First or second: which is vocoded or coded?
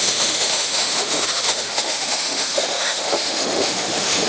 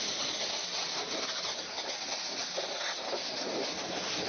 first